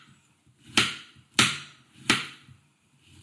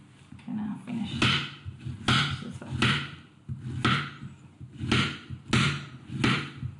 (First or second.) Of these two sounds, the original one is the second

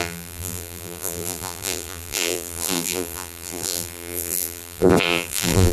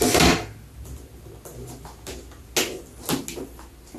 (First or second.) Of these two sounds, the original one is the second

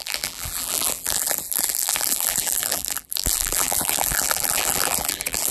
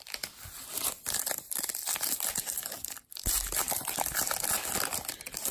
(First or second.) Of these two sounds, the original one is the second